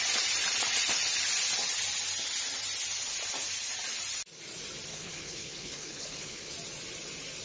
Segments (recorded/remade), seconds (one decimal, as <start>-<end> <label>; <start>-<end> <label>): 0.0-4.9 recorded; 4.9-6.5 remade; 6.5-7.4 recorded